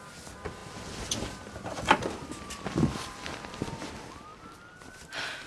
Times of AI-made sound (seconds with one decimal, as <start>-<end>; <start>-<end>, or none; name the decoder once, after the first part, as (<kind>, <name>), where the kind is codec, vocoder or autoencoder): 0.6-3.9 (vocoder, BigVGAN v2); 4.3-5.1